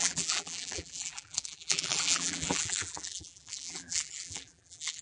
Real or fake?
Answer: fake